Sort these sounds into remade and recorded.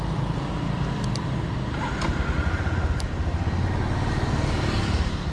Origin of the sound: recorded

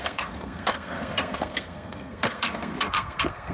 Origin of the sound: remade